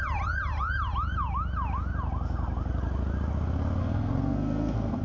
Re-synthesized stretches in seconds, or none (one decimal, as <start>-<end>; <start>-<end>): 3.8-5.0